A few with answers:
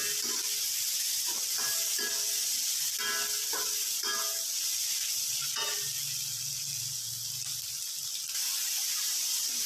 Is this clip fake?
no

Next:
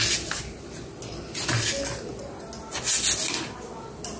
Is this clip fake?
no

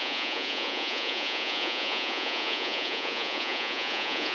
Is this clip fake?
yes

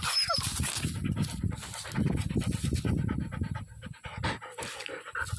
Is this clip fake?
no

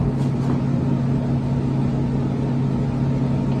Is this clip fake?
no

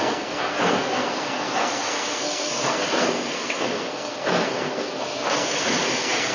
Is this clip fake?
yes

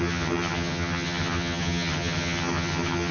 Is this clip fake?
yes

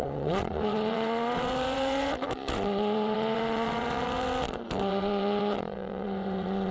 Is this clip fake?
yes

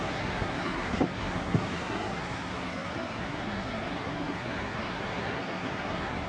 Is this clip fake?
yes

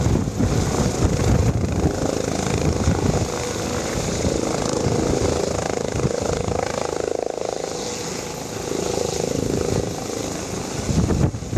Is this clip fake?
no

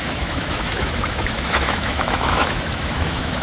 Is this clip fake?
yes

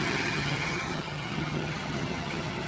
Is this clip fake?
yes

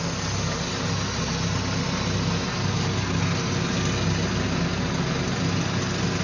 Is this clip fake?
no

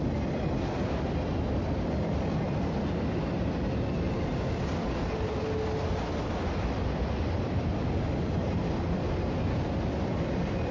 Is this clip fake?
no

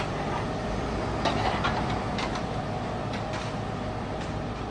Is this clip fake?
no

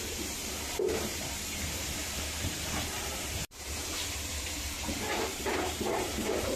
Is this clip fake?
yes